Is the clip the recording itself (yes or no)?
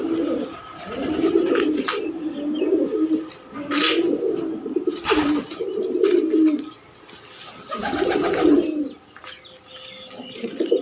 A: yes